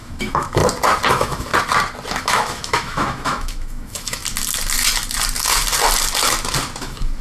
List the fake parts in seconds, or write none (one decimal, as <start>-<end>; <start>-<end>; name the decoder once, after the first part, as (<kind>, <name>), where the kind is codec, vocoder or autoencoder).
0.0-0.6 (autoencoder, DAC-VAE); 1.1-1.5; 2.2-4.2; 6.8-7.2